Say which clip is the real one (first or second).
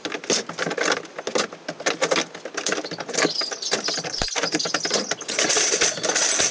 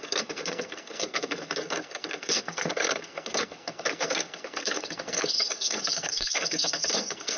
first